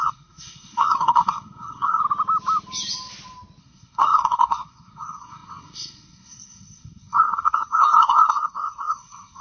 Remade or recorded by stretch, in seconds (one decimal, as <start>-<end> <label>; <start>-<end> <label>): 0.0-2.0 remade; 2.0-3.6 recorded; 3.6-9.4 remade